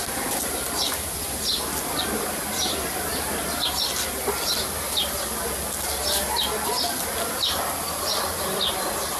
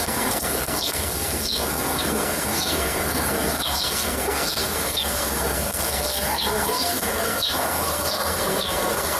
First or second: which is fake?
second